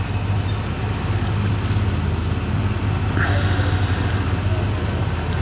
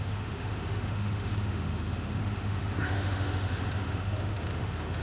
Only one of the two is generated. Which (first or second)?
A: second